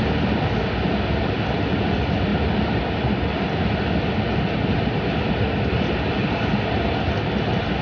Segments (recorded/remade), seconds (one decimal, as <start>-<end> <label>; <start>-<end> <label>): 0.0-7.8 recorded